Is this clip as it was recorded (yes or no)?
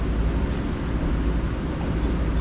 yes